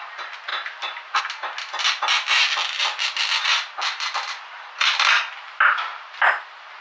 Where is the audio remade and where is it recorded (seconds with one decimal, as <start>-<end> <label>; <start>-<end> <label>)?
0.0-6.8 recorded